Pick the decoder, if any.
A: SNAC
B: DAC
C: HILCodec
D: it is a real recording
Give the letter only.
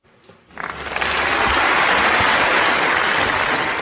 D